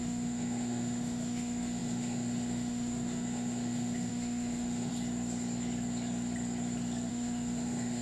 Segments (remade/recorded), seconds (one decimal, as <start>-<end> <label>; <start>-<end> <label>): 0.0-4.9 remade; 4.9-7.1 recorded; 7.1-8.0 remade